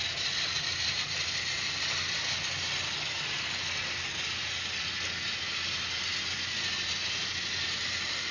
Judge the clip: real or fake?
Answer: real